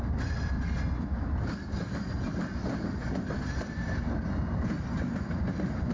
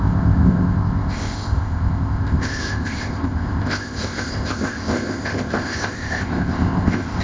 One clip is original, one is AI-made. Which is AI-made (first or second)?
second